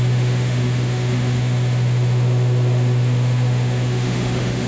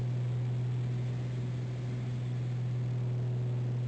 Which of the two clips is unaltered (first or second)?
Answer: second